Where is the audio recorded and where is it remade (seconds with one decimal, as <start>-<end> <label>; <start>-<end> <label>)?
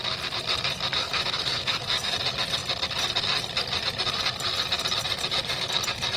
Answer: 0.0-1.0 recorded; 1.0-2.1 remade; 2.1-6.2 recorded